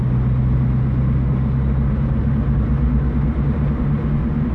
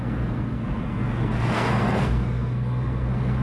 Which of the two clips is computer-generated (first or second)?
second